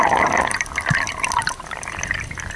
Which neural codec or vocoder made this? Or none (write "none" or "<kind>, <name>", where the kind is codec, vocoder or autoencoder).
none